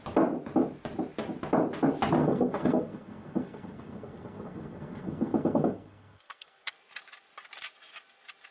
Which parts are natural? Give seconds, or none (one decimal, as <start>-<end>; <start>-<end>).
0.0-2.2; 6.7-8.5